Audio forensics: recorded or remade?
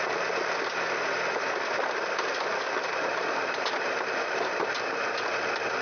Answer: recorded